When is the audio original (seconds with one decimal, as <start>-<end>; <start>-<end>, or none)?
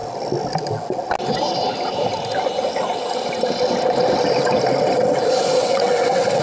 0.0-5.6